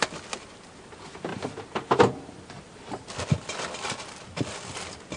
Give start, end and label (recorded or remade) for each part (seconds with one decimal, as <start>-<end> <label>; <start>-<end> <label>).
0.0-1.3 recorded; 1.3-3.5 remade; 3.5-5.2 recorded